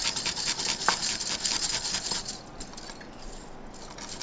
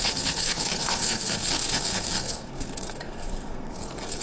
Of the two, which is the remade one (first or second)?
second